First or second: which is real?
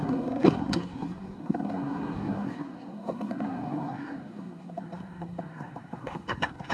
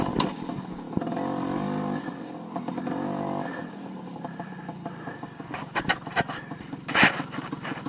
second